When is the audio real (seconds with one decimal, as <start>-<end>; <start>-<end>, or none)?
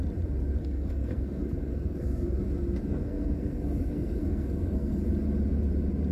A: 0.0-0.6; 2.4-2.9; 5.0-6.1